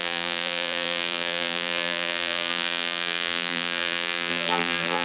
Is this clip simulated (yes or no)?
yes